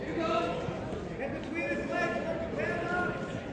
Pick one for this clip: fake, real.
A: real